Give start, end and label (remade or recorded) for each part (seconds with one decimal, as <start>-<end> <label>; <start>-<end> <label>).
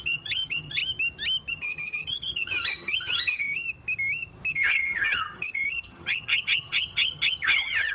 0.0-0.8 remade; 0.8-1.5 recorded; 1.5-3.6 remade; 3.6-4.5 recorded; 4.5-7.9 remade